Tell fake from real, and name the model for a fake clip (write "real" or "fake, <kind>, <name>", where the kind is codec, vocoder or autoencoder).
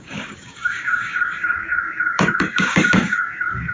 fake, codec, DAC